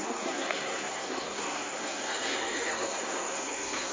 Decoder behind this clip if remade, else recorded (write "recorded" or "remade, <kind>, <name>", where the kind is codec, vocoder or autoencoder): remade, codec, SNAC